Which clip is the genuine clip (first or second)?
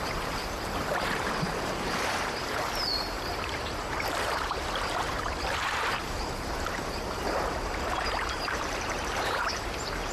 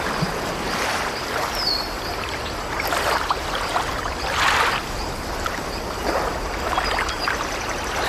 second